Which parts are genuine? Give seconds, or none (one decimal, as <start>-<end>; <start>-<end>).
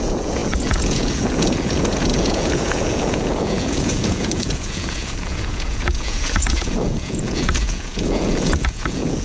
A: none